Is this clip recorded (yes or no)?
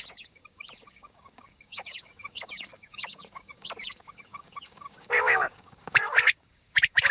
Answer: no